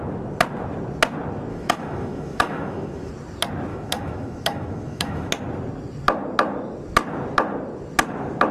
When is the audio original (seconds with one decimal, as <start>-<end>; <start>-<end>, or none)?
0.0-1.5; 3.1-3.7; 5.3-8.5